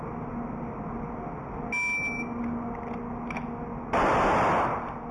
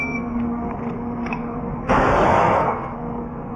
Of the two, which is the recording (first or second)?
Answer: first